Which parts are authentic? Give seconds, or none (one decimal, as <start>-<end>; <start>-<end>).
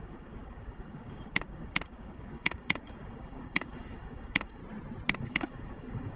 4.6-5.2